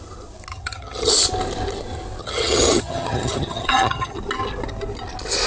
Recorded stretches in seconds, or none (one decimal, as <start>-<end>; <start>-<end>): 0.0-0.5; 1.1-2.2; 4.2-5.5